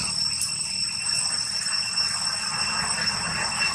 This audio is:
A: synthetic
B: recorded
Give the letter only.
B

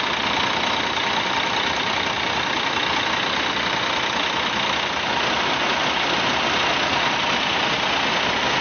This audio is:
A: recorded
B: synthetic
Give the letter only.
A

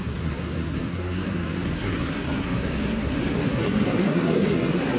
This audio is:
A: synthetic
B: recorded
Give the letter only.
A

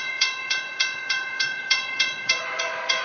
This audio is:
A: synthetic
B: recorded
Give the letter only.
A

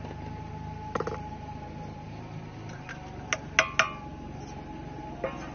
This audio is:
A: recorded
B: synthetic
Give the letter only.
A